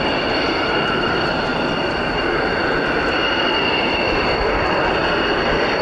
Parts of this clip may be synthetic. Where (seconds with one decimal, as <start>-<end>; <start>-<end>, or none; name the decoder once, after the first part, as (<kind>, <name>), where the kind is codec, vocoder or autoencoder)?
0.0-1.5 (vocoder, BigVGAN v2); 2.1-2.6